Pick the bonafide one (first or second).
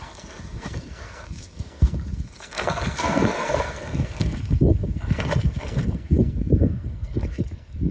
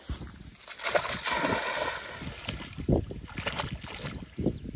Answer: second